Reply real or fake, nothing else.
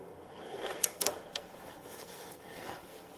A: fake